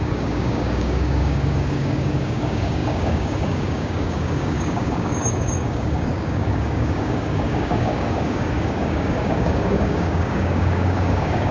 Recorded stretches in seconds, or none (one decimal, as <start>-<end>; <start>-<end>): none